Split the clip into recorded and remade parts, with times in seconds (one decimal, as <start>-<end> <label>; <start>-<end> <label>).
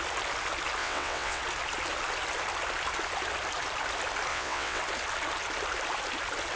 0.0-0.8 recorded; 0.8-1.4 remade; 1.4-4.3 recorded; 4.3-4.8 remade; 4.8-6.6 recorded